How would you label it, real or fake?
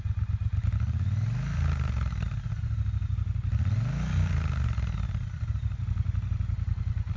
real